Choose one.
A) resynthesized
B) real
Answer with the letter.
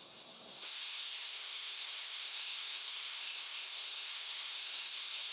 A